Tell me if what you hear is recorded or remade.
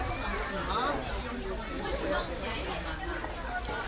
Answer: recorded